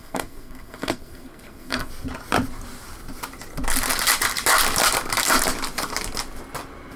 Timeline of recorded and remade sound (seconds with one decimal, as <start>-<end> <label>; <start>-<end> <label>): 0.0-1.9 remade; 1.9-7.0 recorded